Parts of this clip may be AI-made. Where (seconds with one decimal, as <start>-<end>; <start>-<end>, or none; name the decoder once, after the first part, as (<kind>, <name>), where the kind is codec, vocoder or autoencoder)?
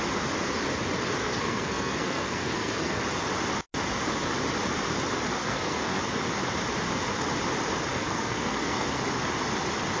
1.2-3.0 (codec, SNAC); 5.4-6.0; 7.9-9.0